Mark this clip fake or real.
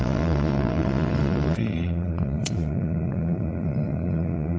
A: fake